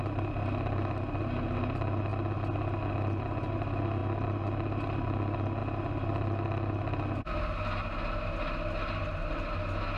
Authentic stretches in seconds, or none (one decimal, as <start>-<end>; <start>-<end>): 0.0-10.0